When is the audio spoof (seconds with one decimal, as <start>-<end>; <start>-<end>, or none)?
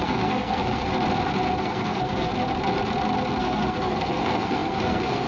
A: 0.0-0.9; 1.6-2.3; 3.4-5.3